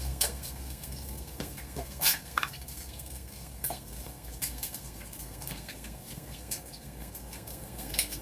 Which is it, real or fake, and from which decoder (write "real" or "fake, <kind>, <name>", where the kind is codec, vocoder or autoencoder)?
fake, codec, SNAC